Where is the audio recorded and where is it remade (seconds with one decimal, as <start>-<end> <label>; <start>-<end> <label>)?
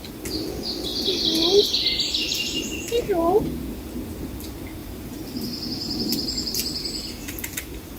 0.0-2.3 recorded; 2.3-3.4 remade; 3.4-4.8 recorded; 4.8-5.4 remade; 5.4-8.0 recorded